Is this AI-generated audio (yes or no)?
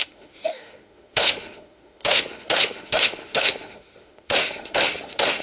yes